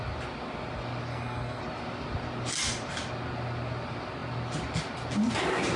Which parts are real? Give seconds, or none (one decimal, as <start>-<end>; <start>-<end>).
0.0-1.1; 1.6-5.8